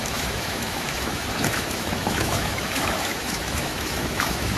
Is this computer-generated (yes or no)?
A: yes